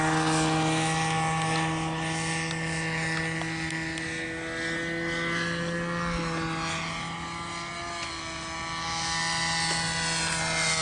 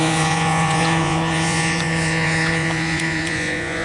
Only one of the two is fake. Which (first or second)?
second